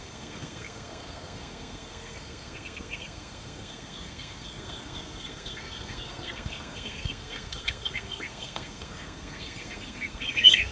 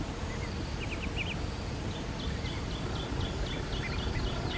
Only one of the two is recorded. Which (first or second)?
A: second